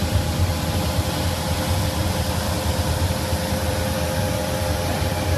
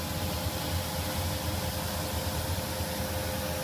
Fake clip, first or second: first